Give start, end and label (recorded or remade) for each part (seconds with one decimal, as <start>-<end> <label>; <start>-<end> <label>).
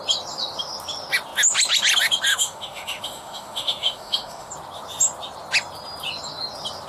0.0-2.3 recorded; 2.3-4.5 remade; 4.5-6.9 recorded